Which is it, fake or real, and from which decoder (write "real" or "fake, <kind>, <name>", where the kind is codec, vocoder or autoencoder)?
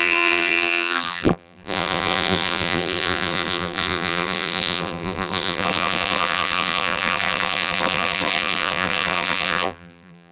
fake, vocoder, BigVGAN v2